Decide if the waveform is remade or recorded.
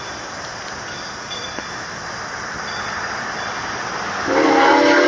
recorded